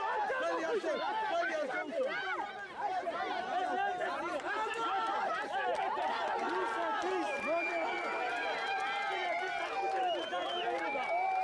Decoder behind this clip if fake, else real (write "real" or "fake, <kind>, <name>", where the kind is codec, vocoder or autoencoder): real